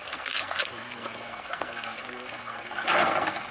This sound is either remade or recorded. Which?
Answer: remade